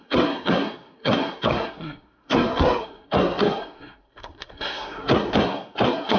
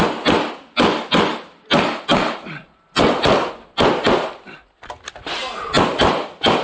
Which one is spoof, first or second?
first